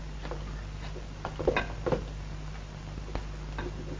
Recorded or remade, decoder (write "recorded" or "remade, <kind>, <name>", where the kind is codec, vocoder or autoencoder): recorded